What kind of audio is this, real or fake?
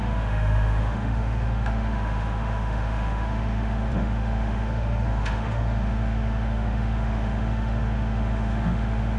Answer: fake